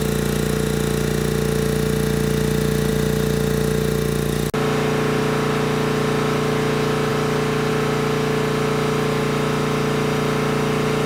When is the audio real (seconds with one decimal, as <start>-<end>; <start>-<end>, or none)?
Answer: 0.0-11.1